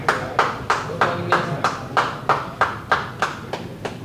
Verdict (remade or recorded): recorded